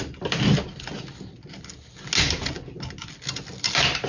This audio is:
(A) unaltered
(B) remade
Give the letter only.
A